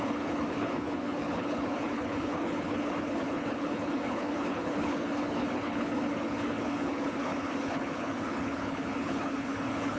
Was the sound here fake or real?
fake